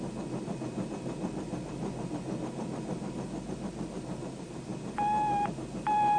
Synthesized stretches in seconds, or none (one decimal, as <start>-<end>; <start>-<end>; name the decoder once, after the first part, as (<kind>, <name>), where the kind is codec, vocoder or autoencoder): none